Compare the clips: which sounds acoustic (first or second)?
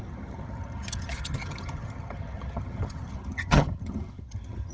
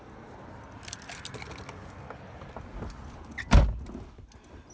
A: second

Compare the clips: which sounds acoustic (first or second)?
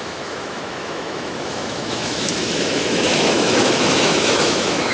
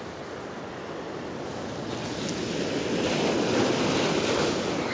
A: second